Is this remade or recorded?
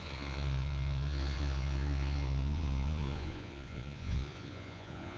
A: remade